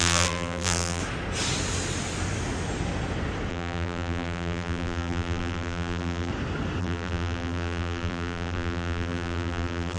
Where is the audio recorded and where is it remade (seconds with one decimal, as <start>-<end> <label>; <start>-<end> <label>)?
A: 0.0-1.0 remade; 1.0-3.5 recorded; 3.5-6.3 remade; 6.3-6.8 recorded; 6.8-10.0 remade